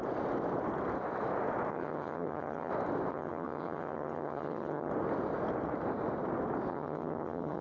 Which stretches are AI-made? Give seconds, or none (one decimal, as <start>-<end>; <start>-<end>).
1.7-2.7; 3.1-4.9; 6.7-7.6